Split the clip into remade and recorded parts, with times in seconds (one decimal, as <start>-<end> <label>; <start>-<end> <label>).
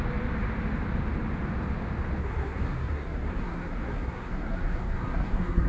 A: 0.0-2.2 recorded; 2.2-5.7 remade